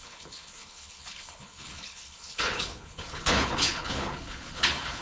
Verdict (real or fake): fake